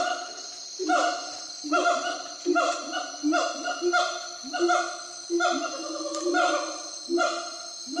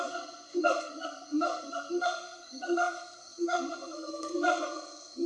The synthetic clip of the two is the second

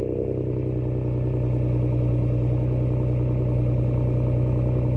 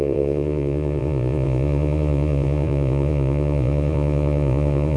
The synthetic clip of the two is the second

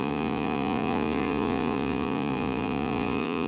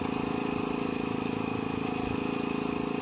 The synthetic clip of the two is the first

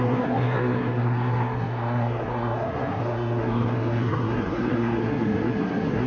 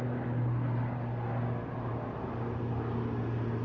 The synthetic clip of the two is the first